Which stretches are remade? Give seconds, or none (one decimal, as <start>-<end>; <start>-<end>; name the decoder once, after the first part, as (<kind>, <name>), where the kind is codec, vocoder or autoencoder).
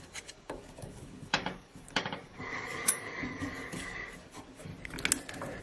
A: 0.0-4.7 (codec, DAC)